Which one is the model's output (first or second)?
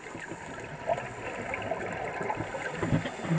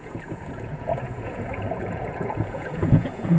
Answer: second